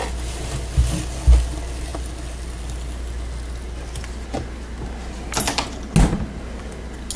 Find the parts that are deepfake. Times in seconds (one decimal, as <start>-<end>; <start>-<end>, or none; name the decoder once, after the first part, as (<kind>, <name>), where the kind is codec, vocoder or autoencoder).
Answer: none